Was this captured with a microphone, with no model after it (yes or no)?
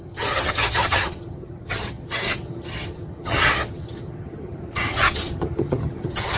no